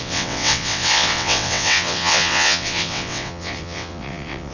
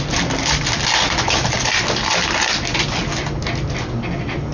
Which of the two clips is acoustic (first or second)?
second